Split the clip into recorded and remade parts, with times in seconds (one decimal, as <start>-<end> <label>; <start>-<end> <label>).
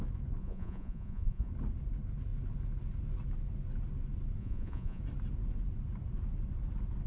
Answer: 0.0-0.4 recorded; 0.4-1.5 remade; 1.5-4.4 recorded; 4.4-5.0 remade; 5.0-7.1 recorded